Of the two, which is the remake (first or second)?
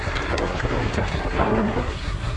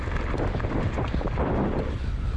first